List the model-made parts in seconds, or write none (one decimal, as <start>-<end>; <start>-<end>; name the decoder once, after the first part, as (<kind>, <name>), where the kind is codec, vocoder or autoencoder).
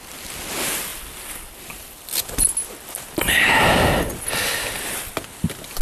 none